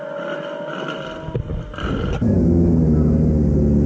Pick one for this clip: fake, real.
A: real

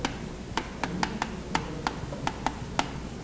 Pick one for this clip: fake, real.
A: real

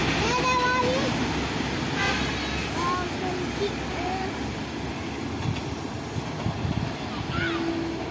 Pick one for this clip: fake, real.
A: real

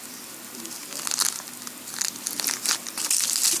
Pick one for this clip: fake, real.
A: real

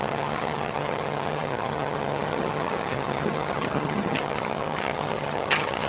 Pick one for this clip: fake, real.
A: fake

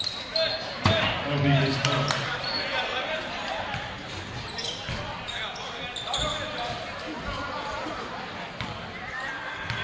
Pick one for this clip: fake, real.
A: real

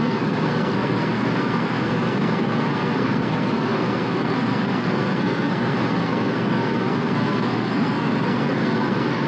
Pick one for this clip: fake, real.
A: fake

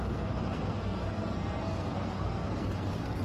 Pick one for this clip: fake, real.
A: fake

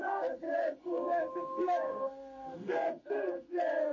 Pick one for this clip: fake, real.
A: fake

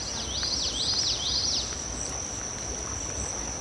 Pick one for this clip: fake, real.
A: real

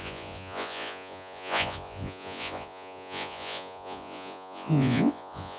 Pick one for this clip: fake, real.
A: fake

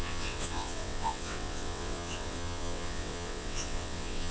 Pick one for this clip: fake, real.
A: fake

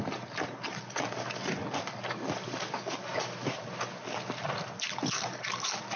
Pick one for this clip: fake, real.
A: real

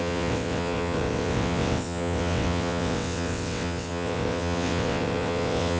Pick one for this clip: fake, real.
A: fake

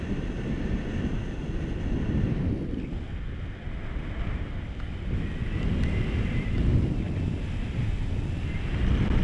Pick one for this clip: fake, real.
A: real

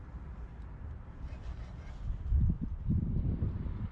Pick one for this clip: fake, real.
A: fake